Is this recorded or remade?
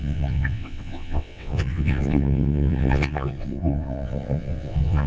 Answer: remade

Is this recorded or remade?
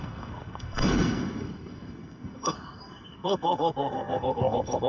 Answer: remade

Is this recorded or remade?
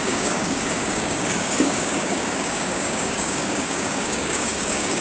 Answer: remade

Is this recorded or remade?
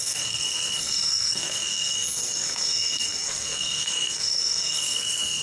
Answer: remade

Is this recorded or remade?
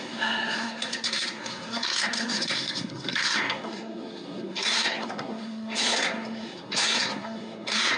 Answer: remade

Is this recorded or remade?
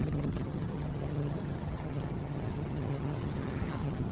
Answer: remade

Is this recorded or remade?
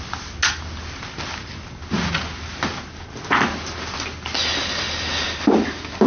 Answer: recorded